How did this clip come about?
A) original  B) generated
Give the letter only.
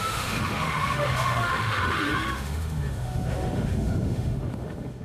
B